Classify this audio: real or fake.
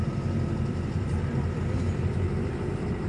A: fake